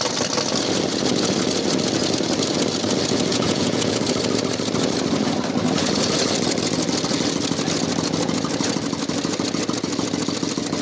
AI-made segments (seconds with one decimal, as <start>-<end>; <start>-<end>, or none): 3.3-4.0